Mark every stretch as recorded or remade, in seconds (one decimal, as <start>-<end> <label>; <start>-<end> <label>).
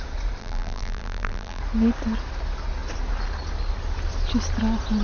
0.0-0.4 recorded; 0.4-1.6 remade; 1.6-5.0 recorded